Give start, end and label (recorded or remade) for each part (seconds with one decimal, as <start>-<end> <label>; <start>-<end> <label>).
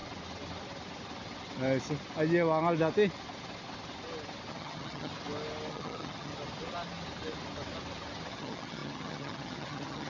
0.0-4.5 recorded; 4.5-5.1 remade; 5.1-5.7 recorded; 5.7-6.3 remade; 6.3-8.3 recorded; 8.3-10.1 remade